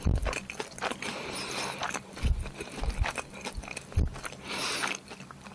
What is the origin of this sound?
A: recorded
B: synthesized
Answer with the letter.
A